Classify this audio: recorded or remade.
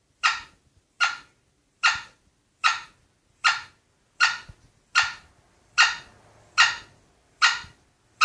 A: recorded